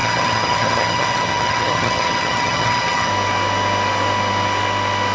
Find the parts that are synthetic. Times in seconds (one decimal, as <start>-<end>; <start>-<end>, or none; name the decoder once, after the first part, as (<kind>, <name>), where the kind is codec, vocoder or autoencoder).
0.0-3.1 (vocoder, HiFi-GAN)